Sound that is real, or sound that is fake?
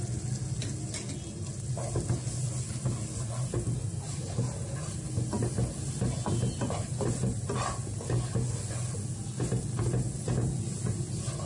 real